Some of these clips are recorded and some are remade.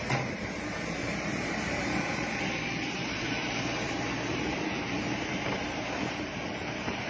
remade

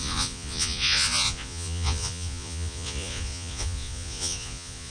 remade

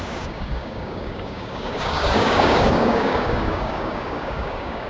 remade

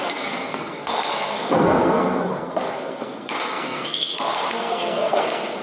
remade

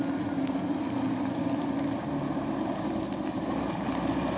recorded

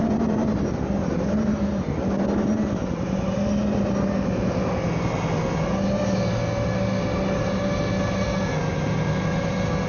recorded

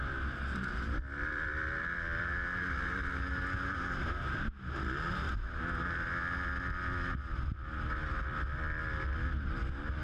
recorded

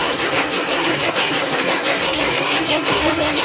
remade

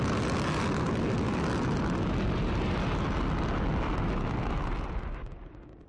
recorded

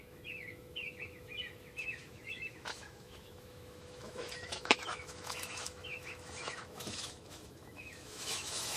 remade